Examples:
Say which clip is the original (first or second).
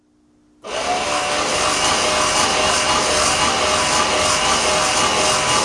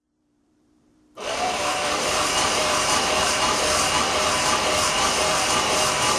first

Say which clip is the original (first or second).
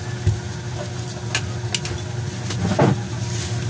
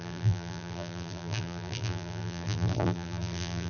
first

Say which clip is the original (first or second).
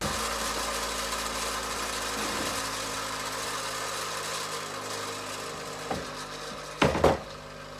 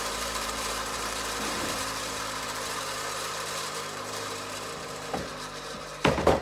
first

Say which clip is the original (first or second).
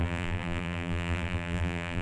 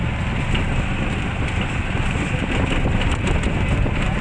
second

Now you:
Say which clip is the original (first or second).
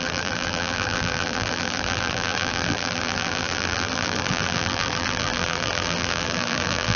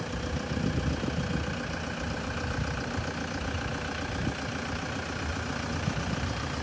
second